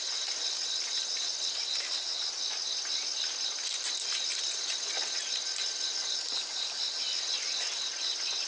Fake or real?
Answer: real